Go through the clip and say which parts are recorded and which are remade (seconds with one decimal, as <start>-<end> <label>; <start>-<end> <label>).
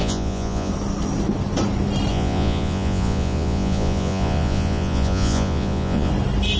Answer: 0.0-0.7 remade; 0.7-2.1 recorded; 2.1-6.1 remade; 6.1-6.6 recorded